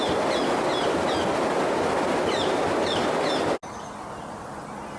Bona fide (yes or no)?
yes